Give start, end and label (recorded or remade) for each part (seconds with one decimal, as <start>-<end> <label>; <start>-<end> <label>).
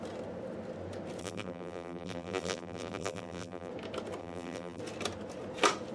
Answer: 0.0-1.2 recorded; 1.2-3.7 remade; 3.7-4.2 recorded; 4.2-4.8 remade; 4.8-5.9 recorded